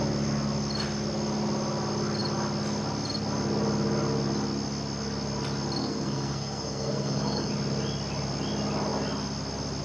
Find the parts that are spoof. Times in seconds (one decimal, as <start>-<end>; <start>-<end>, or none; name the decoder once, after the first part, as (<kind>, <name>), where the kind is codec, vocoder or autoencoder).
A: 5.8-7.5 (codec, SNAC)